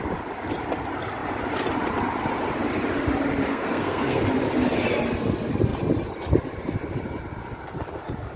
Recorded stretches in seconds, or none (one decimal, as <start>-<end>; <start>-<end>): 0.0-3.5; 4.2-8.4